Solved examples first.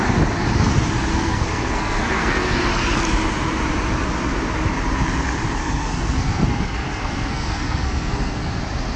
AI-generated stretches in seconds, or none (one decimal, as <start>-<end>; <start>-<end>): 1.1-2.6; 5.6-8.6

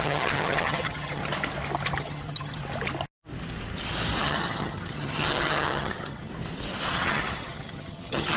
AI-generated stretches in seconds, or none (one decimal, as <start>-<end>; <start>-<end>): 0.0-1.2; 2.0-2.6; 4.2-6.3; 6.9-8.4

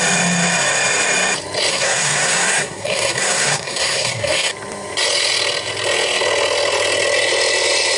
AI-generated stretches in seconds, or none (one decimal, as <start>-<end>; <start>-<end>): 1.7-4.5